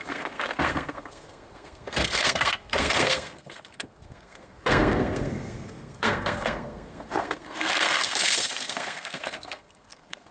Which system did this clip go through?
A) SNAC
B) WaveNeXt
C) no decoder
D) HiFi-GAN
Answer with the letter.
A